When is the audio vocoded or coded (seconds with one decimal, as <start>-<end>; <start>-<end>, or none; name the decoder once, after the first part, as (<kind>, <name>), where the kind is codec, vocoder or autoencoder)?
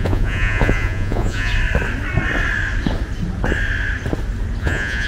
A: 0.0-1.5 (vocoder, Vocos); 4.6-5.1